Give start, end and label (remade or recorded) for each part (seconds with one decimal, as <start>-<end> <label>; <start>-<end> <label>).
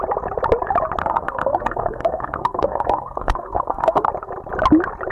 0.0-1.0 recorded; 1.0-4.1 remade; 4.1-5.1 recorded